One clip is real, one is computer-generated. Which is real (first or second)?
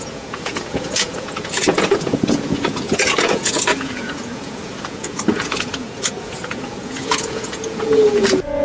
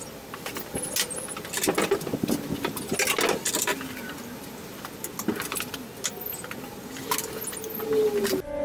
second